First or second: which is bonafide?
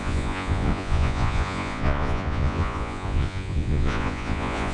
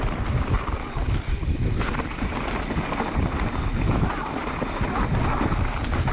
second